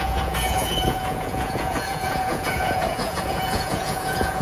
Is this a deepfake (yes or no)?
yes